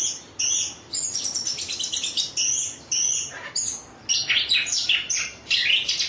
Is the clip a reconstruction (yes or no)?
no